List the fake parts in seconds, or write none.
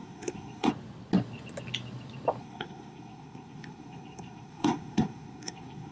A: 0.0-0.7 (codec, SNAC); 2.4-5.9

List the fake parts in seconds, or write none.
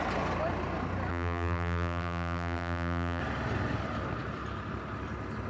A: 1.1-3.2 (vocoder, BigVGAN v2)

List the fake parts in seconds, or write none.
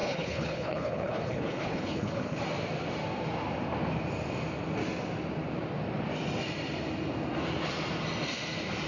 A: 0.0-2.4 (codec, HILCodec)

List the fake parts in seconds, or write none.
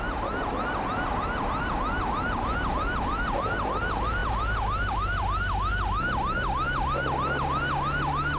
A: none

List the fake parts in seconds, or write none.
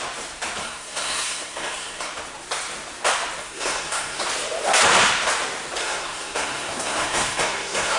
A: 0.6-2.1 (codec, SNAC); 3.4-4.2; 5.8-8.0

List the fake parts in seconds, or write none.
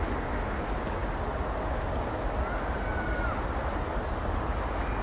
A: none